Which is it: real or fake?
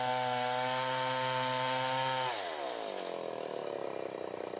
real